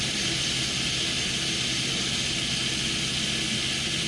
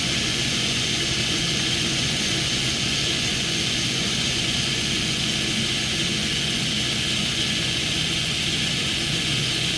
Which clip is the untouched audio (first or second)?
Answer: first